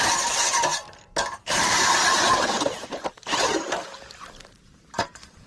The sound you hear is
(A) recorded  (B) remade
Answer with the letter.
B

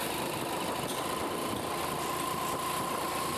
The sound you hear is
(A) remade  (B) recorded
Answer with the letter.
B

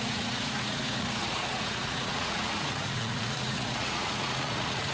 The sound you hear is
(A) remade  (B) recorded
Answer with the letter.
A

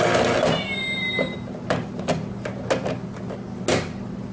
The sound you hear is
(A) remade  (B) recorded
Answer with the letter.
B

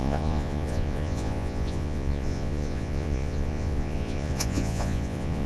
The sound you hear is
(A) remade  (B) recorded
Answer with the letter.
A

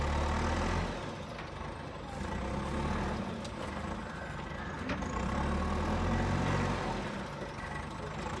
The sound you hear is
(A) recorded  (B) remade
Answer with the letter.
A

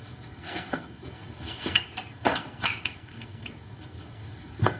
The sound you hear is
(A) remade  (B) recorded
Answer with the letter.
A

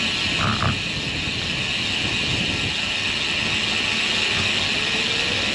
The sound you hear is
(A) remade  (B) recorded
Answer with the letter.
B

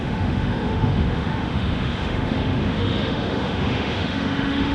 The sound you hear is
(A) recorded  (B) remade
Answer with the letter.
B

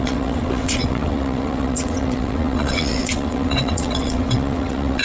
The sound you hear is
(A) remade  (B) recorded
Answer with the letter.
A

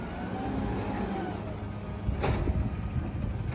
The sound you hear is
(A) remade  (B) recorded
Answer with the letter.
B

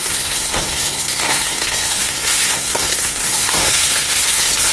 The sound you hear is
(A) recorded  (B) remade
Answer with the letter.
B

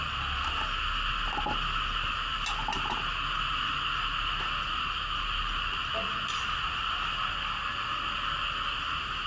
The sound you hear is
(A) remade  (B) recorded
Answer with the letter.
B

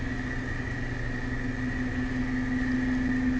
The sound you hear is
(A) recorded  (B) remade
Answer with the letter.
A